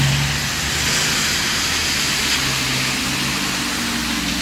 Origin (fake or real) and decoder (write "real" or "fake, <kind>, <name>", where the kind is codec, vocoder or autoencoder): real